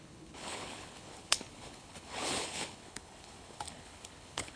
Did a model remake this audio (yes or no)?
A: yes